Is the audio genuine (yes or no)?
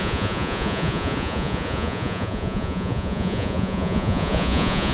no